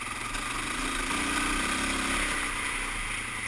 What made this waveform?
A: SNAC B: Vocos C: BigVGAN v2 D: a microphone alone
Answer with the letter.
D